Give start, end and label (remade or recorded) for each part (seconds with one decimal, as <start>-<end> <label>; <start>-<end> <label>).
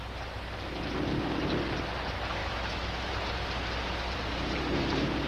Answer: 0.0-2.4 recorded; 2.4-3.1 remade; 3.1-5.3 recorded